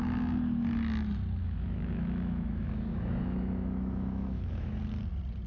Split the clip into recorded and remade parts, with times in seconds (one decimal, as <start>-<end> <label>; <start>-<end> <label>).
0.0-1.4 recorded; 1.4-4.7 remade; 4.7-5.5 recorded